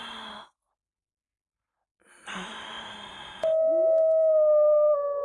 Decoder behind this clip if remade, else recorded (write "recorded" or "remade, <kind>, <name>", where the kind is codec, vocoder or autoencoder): recorded